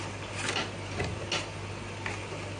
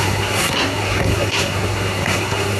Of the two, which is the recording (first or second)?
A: first